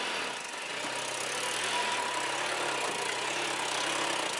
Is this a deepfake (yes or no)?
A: no